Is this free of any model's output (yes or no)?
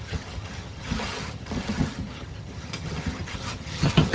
no